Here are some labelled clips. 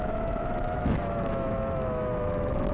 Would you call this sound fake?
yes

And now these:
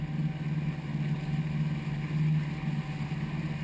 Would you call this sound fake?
no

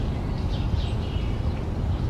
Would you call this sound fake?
no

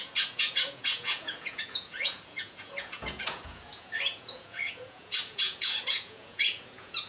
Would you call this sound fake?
yes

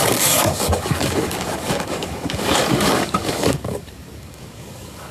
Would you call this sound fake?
yes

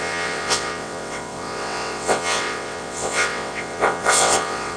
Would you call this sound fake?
yes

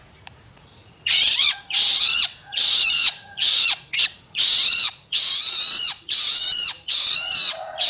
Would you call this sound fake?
yes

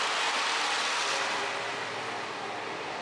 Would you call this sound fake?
no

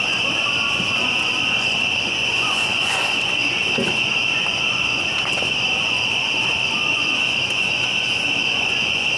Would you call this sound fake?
yes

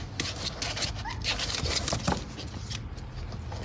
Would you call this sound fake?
no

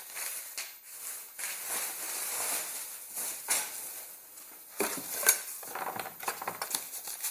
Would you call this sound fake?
no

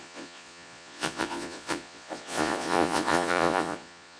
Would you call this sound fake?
yes